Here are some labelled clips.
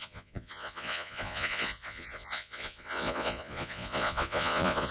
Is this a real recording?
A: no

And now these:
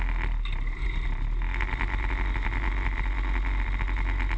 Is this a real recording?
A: yes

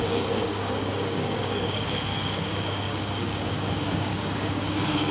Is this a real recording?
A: no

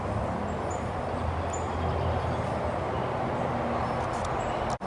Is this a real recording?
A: yes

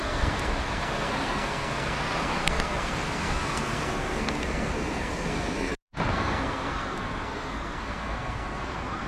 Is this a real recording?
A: no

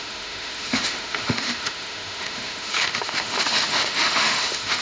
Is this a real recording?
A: no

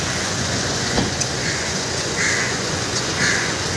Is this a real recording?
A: no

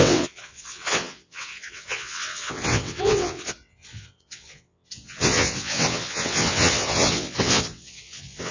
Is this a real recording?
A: no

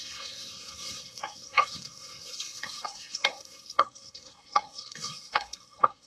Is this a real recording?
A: no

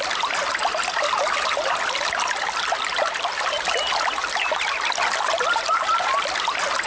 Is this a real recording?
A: no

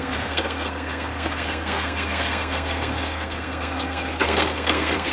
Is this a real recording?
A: no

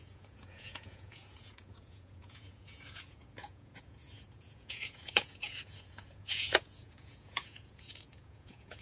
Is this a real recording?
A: no